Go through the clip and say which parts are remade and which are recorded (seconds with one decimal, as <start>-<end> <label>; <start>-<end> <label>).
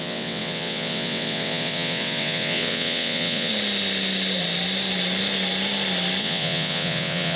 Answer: 0.0-3.5 remade; 3.5-6.2 recorded; 6.2-7.4 remade